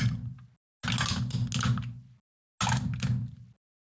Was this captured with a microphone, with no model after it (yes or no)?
yes